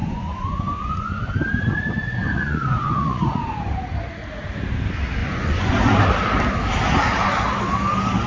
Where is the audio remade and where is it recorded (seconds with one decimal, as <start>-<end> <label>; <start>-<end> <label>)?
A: 0.0-1.2 remade; 1.2-2.2 recorded; 2.2-3.7 remade; 3.7-5.2 recorded; 5.2-5.7 remade; 5.7-8.3 recorded